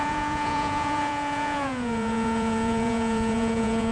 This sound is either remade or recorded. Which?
remade